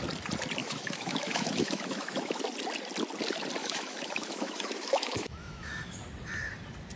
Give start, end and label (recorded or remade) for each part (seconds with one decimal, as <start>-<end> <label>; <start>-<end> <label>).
0.0-0.6 recorded; 0.6-2.4 remade; 2.4-3.6 recorded; 3.6-6.0 remade; 6.0-7.0 recorded

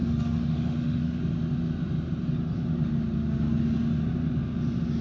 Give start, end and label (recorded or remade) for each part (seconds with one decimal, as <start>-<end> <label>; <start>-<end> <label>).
0.0-1.2 remade; 1.2-5.0 recorded

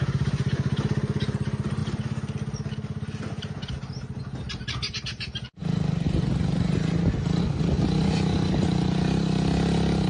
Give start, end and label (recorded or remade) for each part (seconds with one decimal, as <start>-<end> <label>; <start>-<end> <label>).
0.0-10.1 recorded

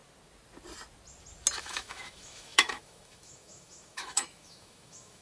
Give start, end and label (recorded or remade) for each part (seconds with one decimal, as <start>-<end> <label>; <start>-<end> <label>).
0.0-1.6 recorded; 1.6-5.2 remade

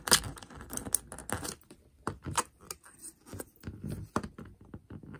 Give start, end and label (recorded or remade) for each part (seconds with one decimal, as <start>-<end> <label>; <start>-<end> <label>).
0.0-5.2 recorded

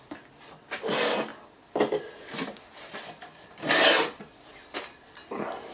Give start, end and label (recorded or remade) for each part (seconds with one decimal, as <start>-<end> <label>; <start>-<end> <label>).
0.0-5.7 recorded

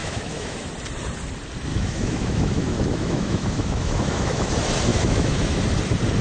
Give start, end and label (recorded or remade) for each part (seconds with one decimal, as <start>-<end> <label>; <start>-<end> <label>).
0.0-0.7 remade; 0.7-1.7 recorded; 1.7-4.5 remade; 4.5-4.9 recorded; 4.9-5.6 remade; 5.6-6.2 recorded

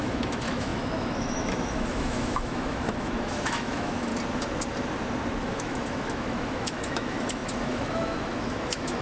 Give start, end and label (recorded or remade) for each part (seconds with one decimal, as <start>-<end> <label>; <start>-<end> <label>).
0.0-4.1 remade; 4.1-5.4 recorded; 5.4-9.0 remade